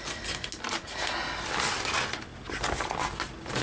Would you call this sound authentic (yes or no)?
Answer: yes